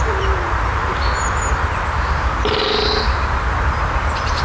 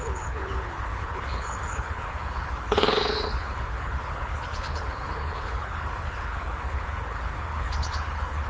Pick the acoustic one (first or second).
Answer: first